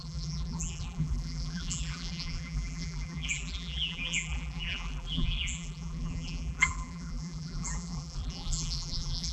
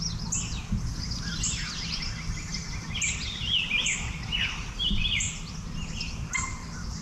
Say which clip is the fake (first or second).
first